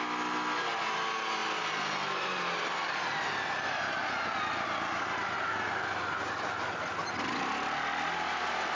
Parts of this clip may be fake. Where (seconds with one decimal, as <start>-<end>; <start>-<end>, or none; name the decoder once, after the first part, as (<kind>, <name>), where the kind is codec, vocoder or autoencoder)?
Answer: none